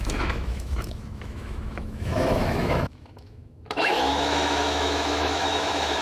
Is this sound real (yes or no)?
no